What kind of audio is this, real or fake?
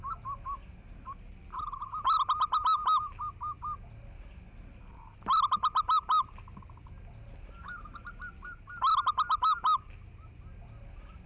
real